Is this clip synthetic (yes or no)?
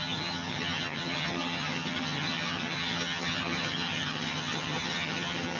yes